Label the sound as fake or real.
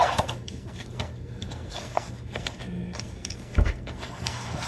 fake